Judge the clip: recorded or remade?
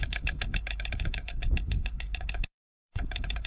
remade